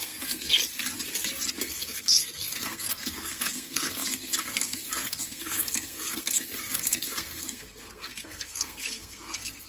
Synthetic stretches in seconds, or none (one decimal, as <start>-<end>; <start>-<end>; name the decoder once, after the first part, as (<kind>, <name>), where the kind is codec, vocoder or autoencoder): 0.0-0.5 (codec, SNAC); 1.6-9.7